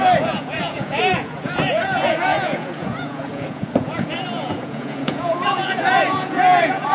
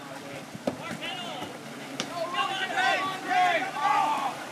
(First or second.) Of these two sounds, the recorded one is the second